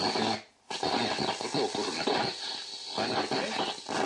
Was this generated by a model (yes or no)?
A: no